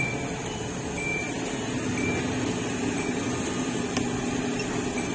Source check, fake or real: real